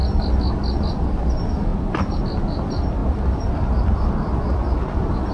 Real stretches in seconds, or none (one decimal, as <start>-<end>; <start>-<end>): 0.0-1.7; 2.2-3.0